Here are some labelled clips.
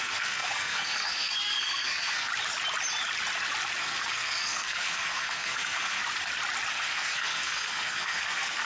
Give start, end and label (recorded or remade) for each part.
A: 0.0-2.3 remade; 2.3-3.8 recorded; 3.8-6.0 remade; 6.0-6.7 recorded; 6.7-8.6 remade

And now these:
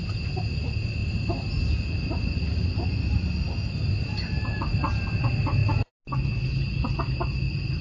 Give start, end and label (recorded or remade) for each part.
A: 0.0-7.8 recorded

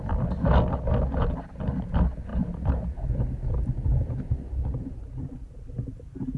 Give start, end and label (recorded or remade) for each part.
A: 0.0-6.4 recorded

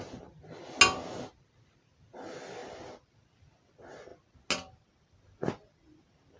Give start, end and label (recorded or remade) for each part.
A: 0.0-6.4 recorded

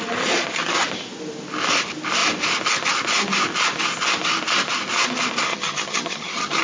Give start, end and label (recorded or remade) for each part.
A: 0.0-5.5 recorded; 5.5-6.6 remade

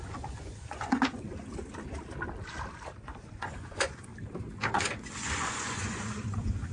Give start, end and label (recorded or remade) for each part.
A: 0.0-1.3 remade; 1.3-3.0 recorded; 3.0-4.1 remade; 4.1-4.7 recorded; 4.7-6.7 remade

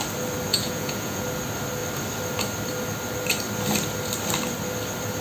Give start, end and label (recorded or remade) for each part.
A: 0.0-0.5 recorded; 0.5-1.2 remade; 1.2-5.2 recorded

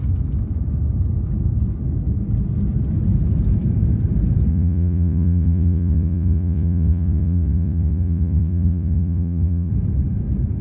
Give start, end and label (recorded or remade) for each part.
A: 0.0-4.5 recorded; 4.5-9.7 remade; 9.7-10.6 recorded